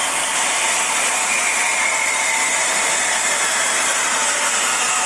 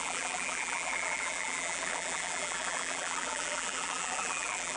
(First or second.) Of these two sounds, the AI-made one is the second